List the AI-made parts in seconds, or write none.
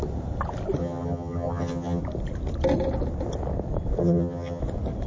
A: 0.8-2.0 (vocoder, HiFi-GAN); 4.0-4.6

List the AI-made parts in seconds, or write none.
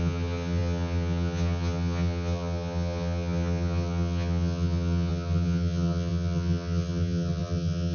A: 0.0-7.9 (vocoder, HiFi-GAN)